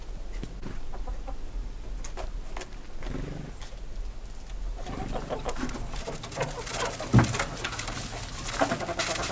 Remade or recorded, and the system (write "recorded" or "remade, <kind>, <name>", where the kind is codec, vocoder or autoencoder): recorded